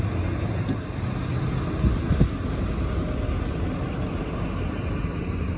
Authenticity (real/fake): real